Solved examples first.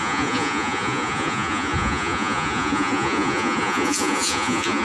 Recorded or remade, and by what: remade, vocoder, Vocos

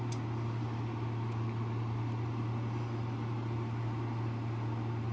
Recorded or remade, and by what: recorded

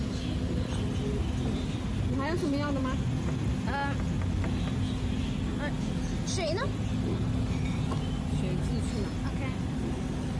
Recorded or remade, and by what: recorded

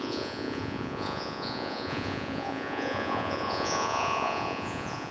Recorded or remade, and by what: remade, vocoder, Vocos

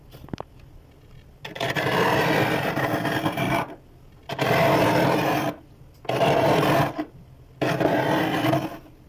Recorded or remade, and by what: recorded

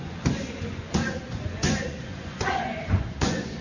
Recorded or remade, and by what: remade, vocoder, Vocos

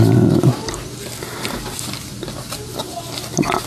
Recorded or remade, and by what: recorded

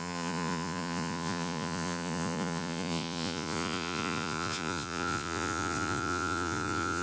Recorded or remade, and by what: remade, vocoder, Vocos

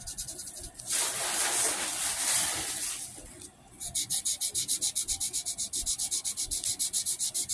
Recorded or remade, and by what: recorded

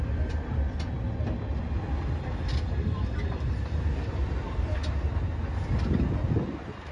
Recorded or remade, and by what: recorded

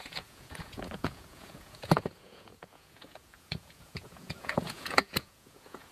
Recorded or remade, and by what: remade, vocoder, Vocos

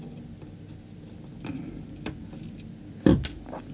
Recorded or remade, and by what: recorded